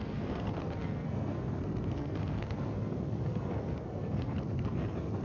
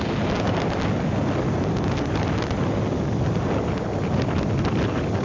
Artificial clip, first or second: first